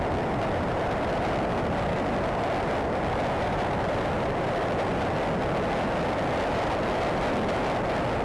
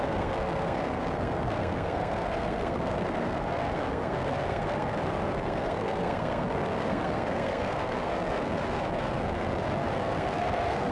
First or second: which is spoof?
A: second